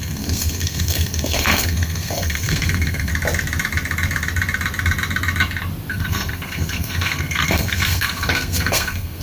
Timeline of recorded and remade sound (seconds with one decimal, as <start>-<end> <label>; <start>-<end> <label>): 0.0-3.1 remade; 3.1-5.9 recorded; 5.9-9.2 remade